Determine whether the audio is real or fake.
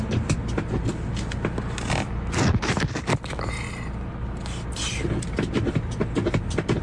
real